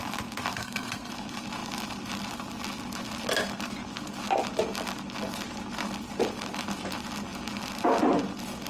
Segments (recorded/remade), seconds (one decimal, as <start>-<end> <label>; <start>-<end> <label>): 0.0-0.5 recorded; 0.5-1.1 remade; 1.1-8.7 recorded